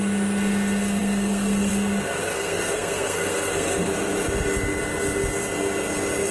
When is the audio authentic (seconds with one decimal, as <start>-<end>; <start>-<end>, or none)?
0.0-1.0; 1.7-2.2; 3.9-6.3